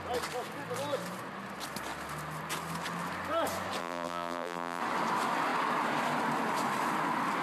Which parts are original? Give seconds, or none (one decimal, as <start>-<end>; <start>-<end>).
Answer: 0.0-3.8; 4.8-7.4